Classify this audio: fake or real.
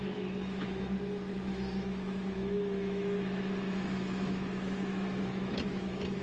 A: fake